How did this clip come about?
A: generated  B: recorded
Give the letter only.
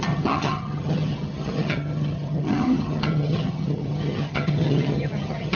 A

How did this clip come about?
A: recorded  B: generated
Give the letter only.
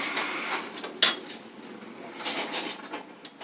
A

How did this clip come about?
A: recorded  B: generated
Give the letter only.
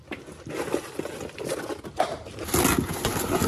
A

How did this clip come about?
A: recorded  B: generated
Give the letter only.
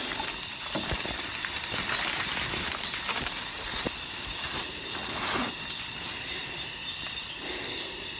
A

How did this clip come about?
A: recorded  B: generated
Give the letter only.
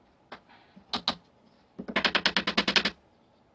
A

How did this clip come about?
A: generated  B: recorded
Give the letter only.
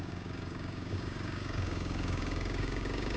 A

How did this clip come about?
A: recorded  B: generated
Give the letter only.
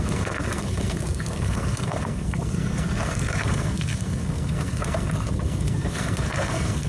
B